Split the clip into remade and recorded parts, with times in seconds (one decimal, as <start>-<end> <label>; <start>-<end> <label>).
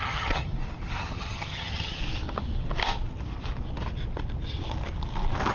0.0-0.5 remade; 0.5-1.0 recorded; 1.0-2.0 remade; 2.0-5.5 recorded